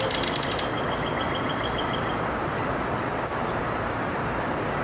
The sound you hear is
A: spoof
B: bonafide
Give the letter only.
B